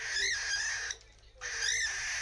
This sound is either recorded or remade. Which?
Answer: recorded